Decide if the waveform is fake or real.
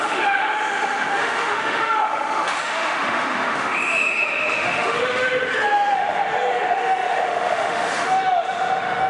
fake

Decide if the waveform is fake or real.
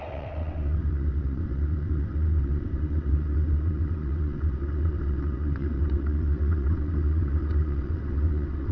fake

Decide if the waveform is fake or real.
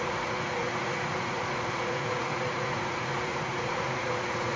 fake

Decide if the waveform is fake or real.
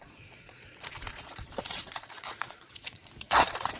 fake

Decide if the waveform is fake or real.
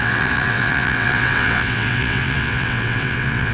fake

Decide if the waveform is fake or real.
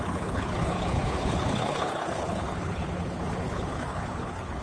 fake